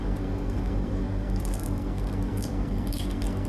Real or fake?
fake